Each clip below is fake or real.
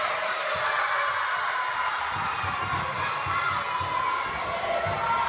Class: real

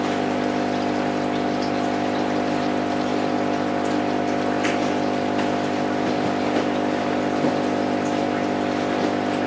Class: real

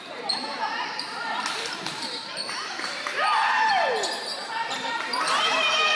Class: fake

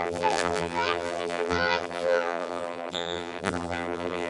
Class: fake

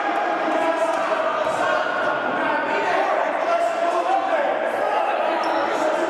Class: fake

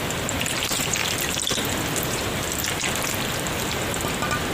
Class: real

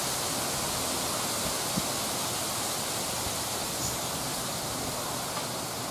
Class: real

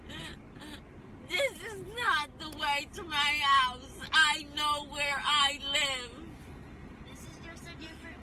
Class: real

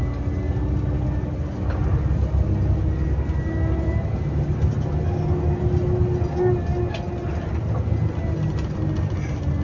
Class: real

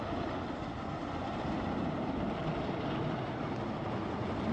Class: real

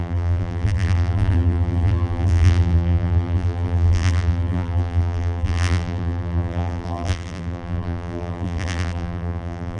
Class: fake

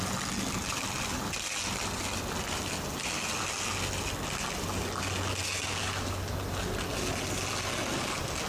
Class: real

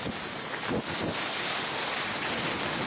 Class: real